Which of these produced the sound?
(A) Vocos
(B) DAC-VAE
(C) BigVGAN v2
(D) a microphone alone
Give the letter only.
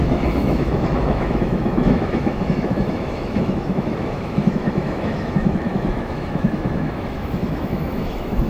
B